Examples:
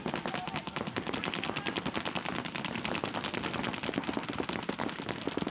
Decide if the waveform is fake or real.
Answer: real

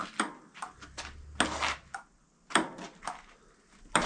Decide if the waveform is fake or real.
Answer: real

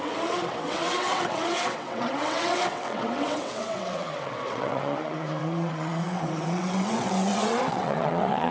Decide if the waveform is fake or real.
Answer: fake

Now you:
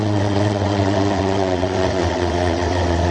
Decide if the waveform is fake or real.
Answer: fake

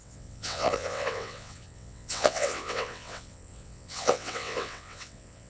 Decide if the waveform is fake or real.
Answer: fake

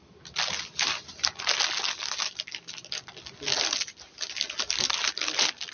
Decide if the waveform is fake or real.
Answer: real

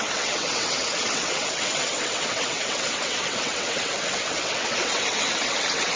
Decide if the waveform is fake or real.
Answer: fake